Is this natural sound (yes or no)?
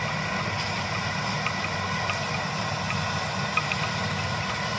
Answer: yes